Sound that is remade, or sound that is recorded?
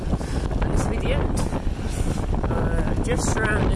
recorded